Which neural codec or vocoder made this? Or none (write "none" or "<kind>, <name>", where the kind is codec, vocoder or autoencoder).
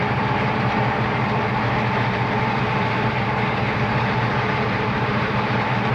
vocoder, BigVGAN v2